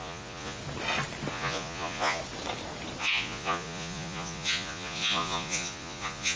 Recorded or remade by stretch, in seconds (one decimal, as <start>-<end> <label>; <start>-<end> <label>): 0.0-0.6 remade; 0.6-1.3 recorded; 1.3-2.2 remade; 2.2-3.0 recorded; 3.0-6.4 remade